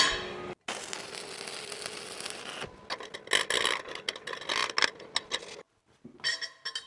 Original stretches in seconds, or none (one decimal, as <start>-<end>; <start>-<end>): 0.0-6.9